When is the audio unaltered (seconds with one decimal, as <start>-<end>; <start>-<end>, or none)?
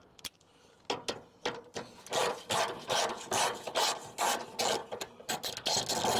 0.0-6.2